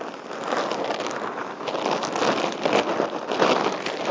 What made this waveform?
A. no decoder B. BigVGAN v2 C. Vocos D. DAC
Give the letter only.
A